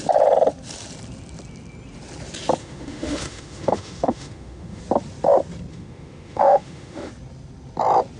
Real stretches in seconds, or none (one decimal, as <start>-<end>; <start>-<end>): 0.0-2.6; 4.8-5.7; 7.1-8.2